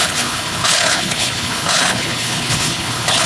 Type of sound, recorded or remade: remade